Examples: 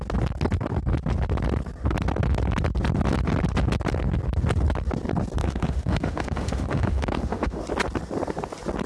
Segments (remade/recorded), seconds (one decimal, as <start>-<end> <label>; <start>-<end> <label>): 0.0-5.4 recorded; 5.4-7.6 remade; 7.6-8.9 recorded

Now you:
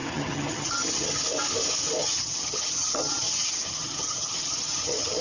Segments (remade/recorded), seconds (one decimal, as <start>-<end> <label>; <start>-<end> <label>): 0.0-1.2 remade; 1.2-2.0 recorded; 2.0-5.2 remade

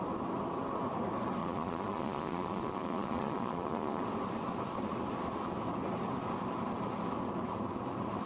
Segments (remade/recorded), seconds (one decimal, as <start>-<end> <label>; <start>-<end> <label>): 0.0-1.4 recorded; 1.4-4.0 remade; 4.0-8.3 recorded

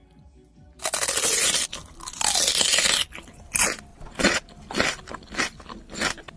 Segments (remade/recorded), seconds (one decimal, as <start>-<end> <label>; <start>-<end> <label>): 0.0-3.9 recorded; 3.9-4.5 remade; 4.5-6.4 recorded

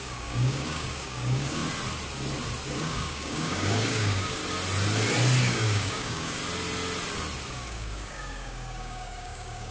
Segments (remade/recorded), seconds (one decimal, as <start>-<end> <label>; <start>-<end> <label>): 0.0-1.6 remade; 1.6-2.7 recorded; 2.7-4.4 remade; 4.4-5.4 recorded; 5.4-6.4 remade; 6.4-7.5 recorded; 7.5-9.7 remade

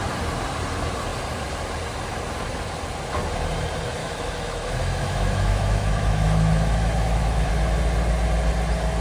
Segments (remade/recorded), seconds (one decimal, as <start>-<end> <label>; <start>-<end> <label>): 0.0-4.0 recorded; 4.0-7.5 remade; 7.5-9.0 recorded